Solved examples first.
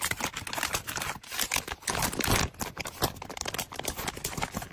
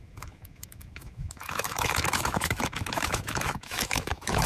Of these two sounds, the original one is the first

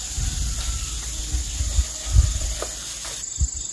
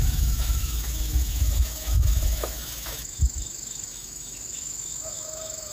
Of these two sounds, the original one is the first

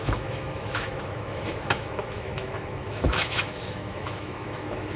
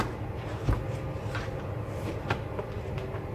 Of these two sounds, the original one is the second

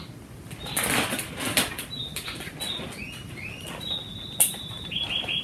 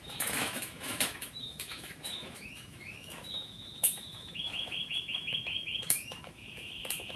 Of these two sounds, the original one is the first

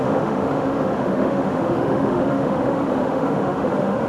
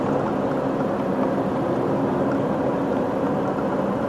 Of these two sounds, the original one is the second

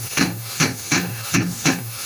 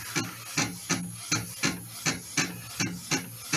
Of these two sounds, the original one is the second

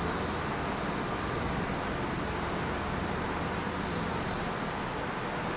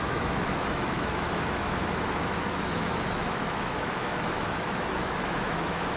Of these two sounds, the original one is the first